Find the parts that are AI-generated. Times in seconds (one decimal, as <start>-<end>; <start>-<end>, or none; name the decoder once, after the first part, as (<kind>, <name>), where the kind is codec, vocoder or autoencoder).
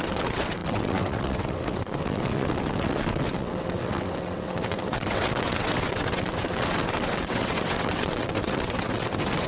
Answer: 0.0-9.5 (vocoder, WaveNeXt)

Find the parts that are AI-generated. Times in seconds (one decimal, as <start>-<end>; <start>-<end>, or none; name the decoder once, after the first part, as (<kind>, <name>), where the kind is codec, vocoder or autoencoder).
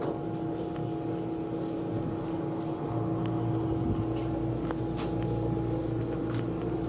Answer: none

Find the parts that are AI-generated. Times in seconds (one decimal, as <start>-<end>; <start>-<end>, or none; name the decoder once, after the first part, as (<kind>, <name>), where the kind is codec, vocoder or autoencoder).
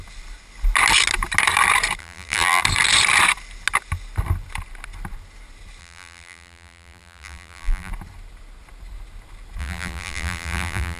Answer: 2.0-2.6 (vocoder, BigVGAN v2); 5.8-7.9; 9.6-11.0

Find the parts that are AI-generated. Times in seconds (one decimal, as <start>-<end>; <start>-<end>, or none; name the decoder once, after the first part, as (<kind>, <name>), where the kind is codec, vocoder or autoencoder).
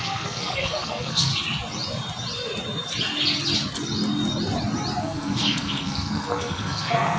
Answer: 0.0-1.3 (codec, SNAC); 5.0-7.2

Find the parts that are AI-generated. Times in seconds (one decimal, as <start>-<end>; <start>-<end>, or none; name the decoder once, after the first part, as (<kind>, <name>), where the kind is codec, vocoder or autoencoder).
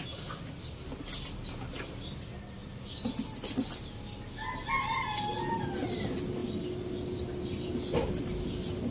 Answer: none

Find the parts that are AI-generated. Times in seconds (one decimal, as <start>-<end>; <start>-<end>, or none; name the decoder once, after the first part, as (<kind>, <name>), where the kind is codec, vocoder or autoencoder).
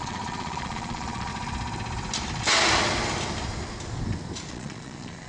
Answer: 0.0-1.3 (vocoder, Vocos); 4.5-5.3